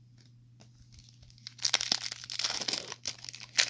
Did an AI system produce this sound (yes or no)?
no